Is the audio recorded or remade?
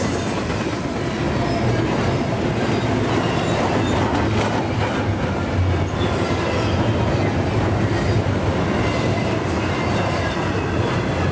recorded